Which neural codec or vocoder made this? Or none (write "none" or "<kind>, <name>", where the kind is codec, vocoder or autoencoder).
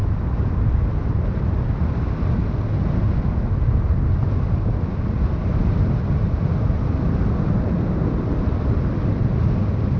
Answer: none